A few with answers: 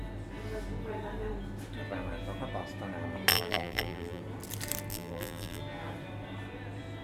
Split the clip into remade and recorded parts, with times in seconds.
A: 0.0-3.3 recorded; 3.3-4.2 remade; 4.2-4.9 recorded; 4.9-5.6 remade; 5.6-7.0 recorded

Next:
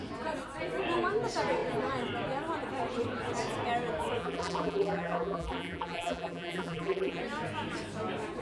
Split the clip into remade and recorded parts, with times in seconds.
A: 0.0-4.2 recorded; 4.2-7.2 remade; 7.2-8.4 recorded